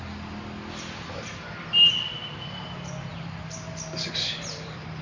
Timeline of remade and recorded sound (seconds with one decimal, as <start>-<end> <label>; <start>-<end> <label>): 0.0-5.0 recorded